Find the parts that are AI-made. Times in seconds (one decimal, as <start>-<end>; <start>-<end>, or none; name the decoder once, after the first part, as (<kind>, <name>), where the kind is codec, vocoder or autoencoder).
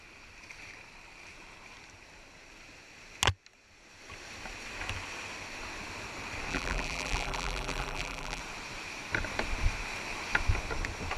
6.5-8.4 (vocoder, BigVGAN v2)